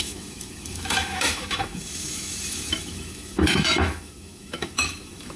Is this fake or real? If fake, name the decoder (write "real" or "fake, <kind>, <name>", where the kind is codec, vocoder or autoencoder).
fake, autoencoder, DAC-VAE